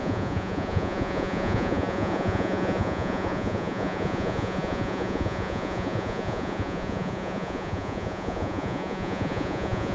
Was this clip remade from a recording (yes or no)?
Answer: yes